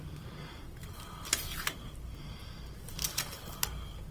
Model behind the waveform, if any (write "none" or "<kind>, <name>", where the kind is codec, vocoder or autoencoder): none